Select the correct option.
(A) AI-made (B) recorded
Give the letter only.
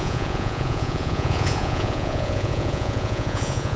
A